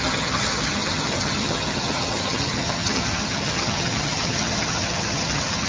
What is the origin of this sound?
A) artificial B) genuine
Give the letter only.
A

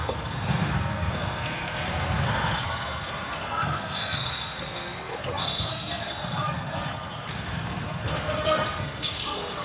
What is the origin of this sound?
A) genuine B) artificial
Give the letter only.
B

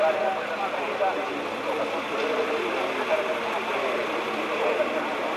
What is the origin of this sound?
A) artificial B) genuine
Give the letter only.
B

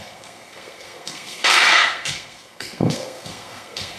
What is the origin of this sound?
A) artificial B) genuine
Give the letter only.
A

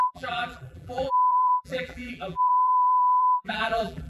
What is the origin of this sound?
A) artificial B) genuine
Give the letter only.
A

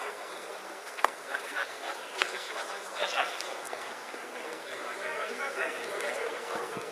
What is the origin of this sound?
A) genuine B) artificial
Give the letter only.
B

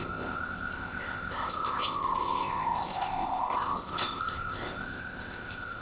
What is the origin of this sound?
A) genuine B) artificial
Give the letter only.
B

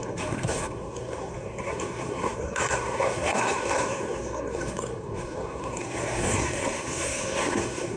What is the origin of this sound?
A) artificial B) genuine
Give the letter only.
A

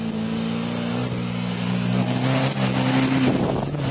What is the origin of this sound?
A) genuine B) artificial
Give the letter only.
A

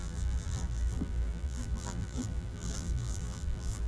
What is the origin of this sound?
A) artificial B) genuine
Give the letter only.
A